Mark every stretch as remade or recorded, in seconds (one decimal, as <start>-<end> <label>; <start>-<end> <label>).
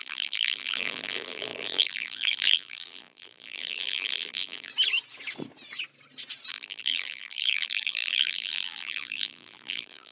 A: 0.0-4.7 remade; 4.7-6.5 recorded; 6.5-10.1 remade